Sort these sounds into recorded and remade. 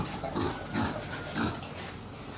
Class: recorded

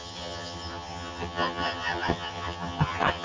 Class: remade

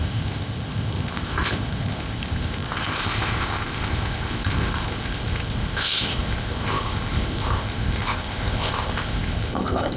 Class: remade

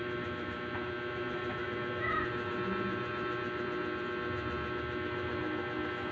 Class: recorded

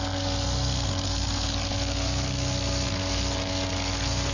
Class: recorded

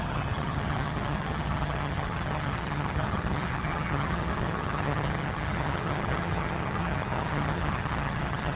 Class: remade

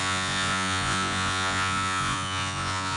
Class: remade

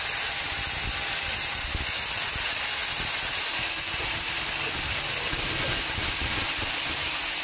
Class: recorded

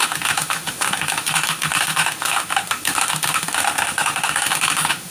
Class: remade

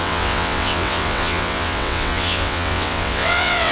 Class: remade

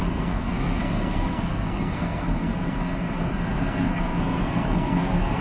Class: remade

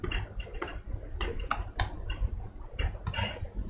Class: recorded